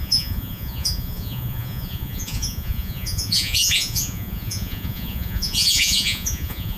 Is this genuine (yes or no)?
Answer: no